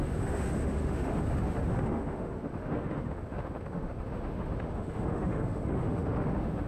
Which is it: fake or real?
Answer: fake